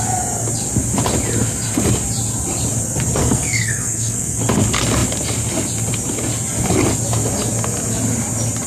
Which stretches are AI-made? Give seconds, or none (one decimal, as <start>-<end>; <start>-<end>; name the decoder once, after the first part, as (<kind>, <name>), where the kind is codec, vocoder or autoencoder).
3.2-4.4 (codec, SNAC)